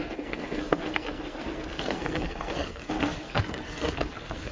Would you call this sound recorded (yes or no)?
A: no